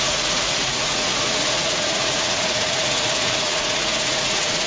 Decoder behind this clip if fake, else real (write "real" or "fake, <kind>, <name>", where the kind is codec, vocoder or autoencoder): fake, vocoder, Vocos